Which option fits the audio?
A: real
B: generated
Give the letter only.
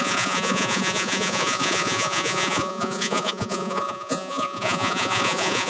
B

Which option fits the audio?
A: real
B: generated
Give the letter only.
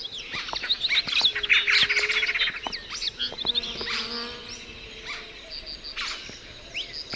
A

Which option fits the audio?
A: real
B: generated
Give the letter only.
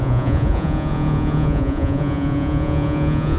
B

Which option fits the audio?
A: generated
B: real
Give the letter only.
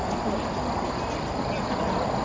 B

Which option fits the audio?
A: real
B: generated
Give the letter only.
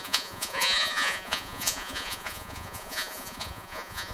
B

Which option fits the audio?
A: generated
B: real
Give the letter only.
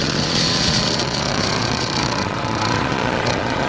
A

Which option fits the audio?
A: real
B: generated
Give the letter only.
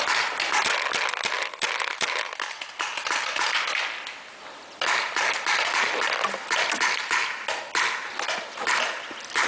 A